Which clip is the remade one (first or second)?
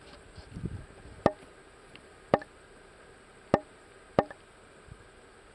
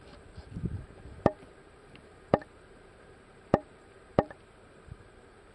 second